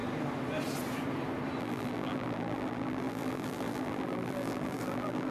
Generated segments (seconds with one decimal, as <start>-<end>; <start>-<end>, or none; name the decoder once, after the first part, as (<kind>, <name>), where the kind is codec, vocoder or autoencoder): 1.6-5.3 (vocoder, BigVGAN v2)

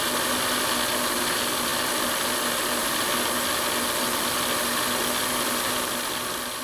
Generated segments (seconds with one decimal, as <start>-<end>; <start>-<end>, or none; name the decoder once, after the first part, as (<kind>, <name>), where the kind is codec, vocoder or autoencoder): 1.7-2.2 (vocoder, BigVGAN v2)

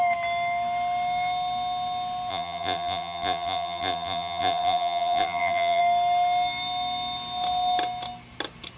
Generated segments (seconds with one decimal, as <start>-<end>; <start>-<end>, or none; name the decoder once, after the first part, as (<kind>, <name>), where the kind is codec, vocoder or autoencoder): 2.3-5.8 (vocoder, BigVGAN v2)

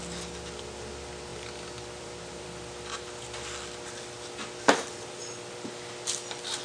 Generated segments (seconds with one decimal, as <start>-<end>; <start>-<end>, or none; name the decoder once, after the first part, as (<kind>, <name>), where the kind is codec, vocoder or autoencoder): 1.3-5.3 (vocoder, BigVGAN v2)

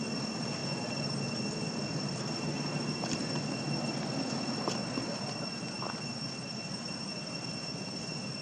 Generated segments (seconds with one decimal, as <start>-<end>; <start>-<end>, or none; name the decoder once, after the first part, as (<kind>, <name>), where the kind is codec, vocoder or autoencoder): none

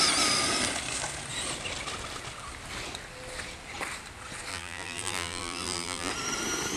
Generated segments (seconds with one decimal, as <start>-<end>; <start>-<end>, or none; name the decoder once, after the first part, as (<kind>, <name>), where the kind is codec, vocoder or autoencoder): 4.5-6.1 (vocoder, BigVGAN v2)

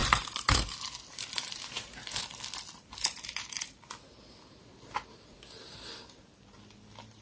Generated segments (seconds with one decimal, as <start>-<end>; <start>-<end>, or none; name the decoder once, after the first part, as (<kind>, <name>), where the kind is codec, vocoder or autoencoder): 0.0-2.2 (vocoder, BigVGAN v2)

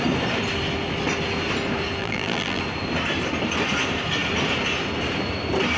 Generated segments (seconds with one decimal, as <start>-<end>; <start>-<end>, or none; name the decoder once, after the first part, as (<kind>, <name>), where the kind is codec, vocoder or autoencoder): 2.0-2.6 (vocoder, BigVGAN v2)